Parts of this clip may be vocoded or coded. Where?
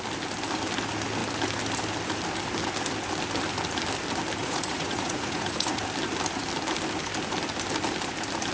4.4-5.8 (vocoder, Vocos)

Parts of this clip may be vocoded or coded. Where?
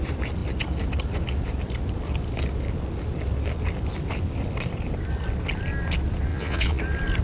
6.3-6.8 (vocoder, Vocos)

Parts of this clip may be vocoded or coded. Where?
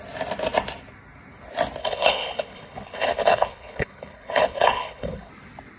1.8-5.3 (codec, HILCodec)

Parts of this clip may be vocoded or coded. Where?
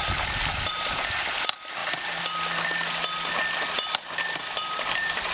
0.0-1.8 (vocoder, BigVGAN v2); 3.4-5.3